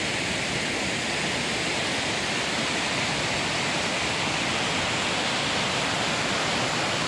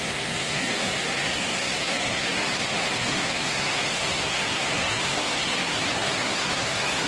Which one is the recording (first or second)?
first